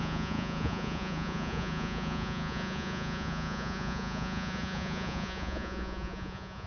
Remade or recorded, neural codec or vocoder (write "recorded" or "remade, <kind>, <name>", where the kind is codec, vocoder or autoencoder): remade, vocoder, Vocos